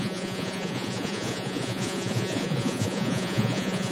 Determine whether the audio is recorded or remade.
remade